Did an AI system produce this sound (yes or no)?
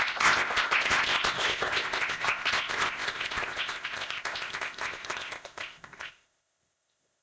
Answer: yes